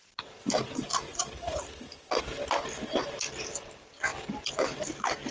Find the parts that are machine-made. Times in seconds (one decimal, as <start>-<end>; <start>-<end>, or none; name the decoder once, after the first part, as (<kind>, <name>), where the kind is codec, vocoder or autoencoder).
1.1-1.8 (vocoder, BigVGAN v2); 4.1-5.3